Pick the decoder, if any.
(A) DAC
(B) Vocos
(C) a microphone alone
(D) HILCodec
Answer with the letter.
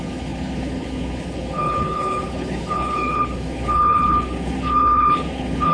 D